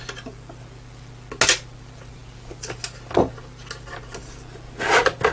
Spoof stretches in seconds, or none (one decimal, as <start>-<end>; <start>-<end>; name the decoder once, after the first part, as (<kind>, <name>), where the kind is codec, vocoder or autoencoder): none